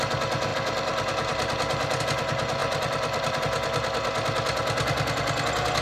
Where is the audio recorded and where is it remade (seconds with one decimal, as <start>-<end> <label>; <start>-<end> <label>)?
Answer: 0.0-0.5 recorded; 0.5-2.0 remade; 2.0-2.6 recorded; 2.6-3.4 remade; 3.4-5.8 recorded